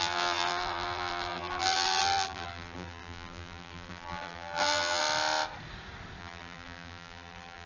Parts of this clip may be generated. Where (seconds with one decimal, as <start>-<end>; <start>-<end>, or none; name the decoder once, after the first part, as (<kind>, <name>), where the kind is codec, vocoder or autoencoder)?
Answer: 0.0-5.0 (vocoder, BigVGAN v2); 6.2-7.7